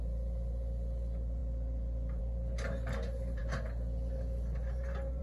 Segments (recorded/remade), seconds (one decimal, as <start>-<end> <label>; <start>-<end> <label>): 0.0-5.2 recorded